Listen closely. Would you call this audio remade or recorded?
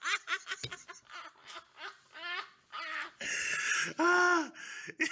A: recorded